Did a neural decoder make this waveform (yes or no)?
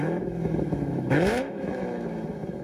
yes